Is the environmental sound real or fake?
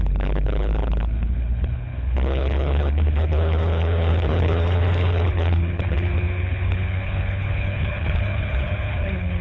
fake